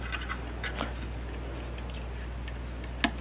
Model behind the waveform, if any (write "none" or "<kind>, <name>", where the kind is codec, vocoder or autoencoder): none